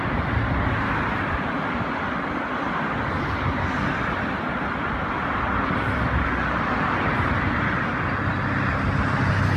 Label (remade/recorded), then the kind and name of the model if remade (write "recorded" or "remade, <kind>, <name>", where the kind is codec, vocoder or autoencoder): recorded